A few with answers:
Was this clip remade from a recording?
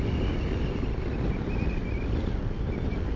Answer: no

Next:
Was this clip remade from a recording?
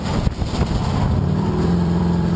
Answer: yes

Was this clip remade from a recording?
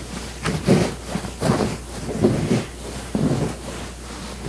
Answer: no